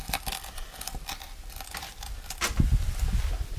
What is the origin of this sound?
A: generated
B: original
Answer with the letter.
A